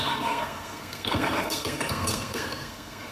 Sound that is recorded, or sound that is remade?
remade